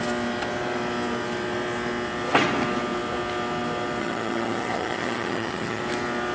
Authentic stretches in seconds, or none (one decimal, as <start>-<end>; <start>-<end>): 0.0-4.0; 5.8-6.3